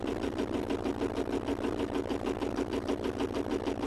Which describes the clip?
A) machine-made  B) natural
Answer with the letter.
B